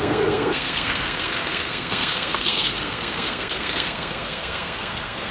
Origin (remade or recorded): remade